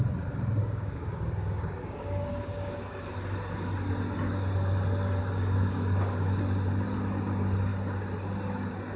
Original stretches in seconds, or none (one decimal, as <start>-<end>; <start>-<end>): 0.0-0.6; 3.0-5.2; 6.4-9.0